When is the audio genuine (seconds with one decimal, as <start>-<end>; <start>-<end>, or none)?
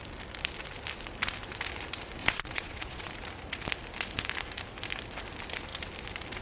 0.0-2.2; 3.1-6.4